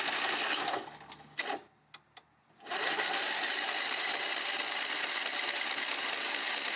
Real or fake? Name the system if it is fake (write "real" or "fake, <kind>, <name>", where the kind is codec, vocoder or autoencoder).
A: real